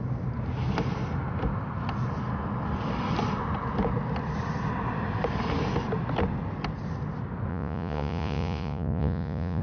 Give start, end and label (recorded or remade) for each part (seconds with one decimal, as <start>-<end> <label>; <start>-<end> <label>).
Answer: 0.0-7.5 recorded; 7.5-9.6 remade